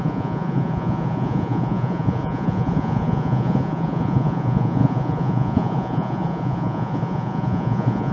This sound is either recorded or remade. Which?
remade